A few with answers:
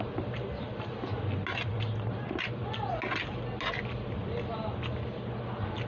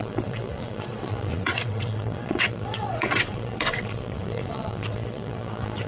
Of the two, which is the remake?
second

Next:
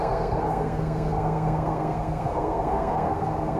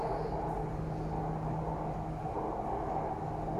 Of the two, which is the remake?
first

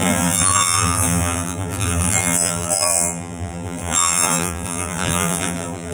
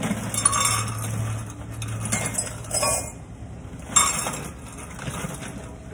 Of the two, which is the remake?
first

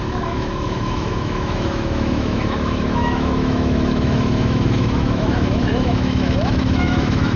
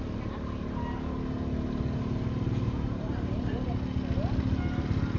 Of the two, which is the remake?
first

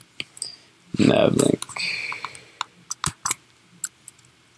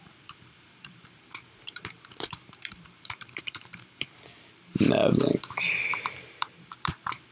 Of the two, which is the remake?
second